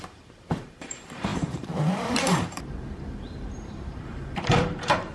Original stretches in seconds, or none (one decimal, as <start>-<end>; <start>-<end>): none